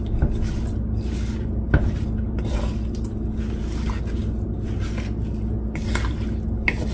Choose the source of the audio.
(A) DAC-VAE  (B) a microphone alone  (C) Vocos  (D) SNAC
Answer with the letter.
B